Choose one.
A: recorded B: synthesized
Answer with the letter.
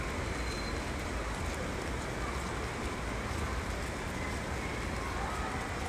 A